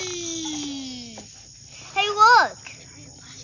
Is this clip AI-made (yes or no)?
no